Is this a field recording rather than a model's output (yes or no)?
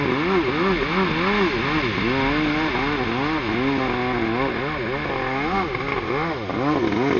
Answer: yes